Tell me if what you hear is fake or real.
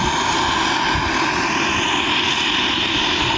real